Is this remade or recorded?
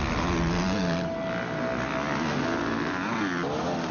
recorded